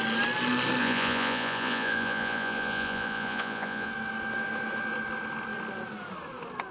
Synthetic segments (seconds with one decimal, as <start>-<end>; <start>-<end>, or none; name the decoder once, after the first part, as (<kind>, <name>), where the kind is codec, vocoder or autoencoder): 0.8-3.9 (vocoder, Vocos)